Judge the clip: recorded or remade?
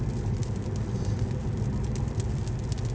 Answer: recorded